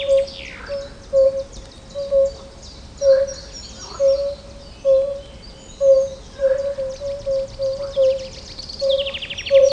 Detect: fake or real real